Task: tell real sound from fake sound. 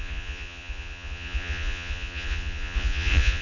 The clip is fake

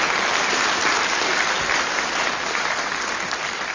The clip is real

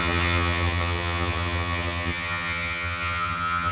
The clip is fake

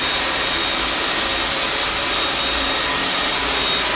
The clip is real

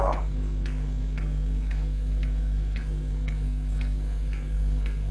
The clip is fake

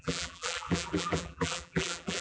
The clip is fake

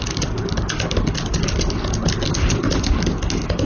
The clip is real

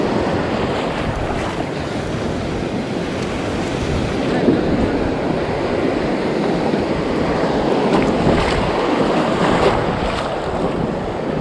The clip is real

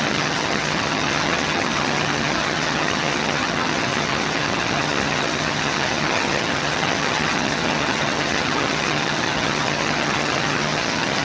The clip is fake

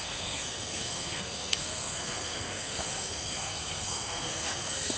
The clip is fake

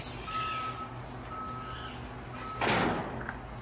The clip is real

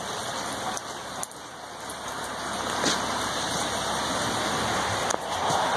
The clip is real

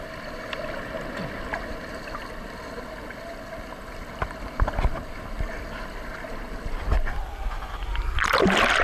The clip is real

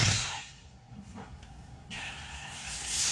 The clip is fake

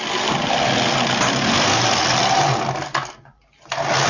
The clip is real